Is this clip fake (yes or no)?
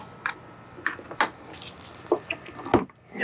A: no